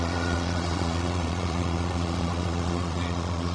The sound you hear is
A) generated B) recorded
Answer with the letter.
A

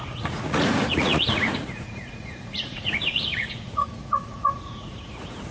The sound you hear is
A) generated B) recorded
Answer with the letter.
A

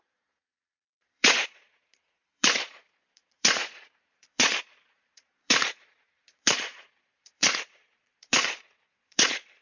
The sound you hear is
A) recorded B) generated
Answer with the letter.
B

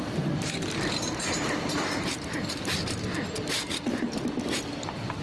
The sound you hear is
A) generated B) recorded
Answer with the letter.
B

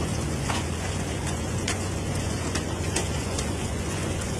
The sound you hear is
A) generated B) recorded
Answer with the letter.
A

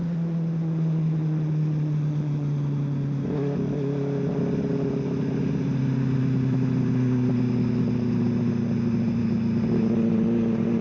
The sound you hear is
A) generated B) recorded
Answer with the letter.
B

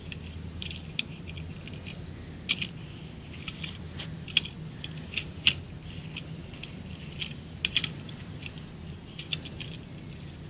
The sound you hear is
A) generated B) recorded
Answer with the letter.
B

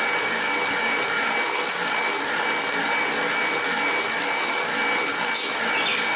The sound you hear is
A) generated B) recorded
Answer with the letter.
B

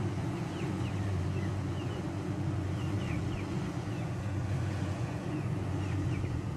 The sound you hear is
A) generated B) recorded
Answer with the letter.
A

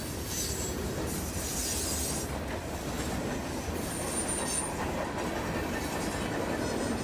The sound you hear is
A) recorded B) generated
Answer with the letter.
A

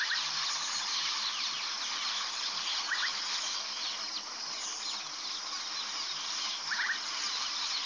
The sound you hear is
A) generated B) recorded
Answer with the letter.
B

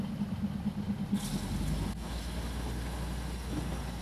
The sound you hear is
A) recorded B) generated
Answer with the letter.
A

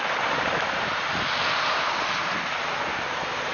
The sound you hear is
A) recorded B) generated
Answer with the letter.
A